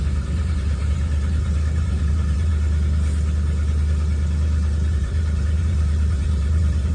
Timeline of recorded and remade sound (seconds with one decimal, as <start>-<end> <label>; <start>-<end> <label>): 0.0-2.5 remade; 2.5-4.9 recorded; 4.9-6.9 remade